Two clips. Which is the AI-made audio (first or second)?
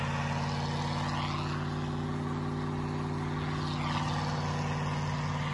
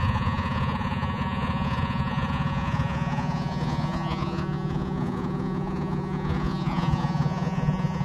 second